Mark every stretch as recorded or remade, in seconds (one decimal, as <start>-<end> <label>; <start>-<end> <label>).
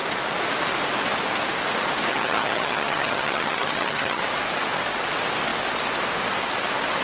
0.0-2.1 recorded; 2.1-4.2 remade; 4.2-7.0 recorded